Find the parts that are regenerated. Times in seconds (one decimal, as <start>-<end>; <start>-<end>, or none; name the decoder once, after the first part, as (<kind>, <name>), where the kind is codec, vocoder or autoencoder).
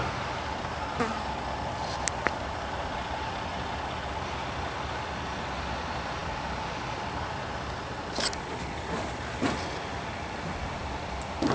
none